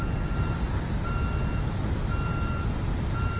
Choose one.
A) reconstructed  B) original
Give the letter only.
B